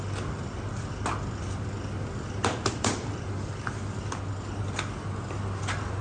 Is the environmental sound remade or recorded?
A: recorded